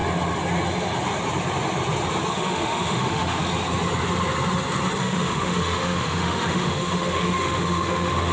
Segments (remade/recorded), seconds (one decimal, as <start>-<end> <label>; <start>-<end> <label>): 0.0-2.3 recorded; 2.3-3.4 remade; 3.4-5.0 recorded; 5.0-8.3 remade